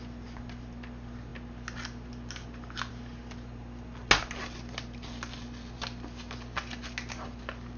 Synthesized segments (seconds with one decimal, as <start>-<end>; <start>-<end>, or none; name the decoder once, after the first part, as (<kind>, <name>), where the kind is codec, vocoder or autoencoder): none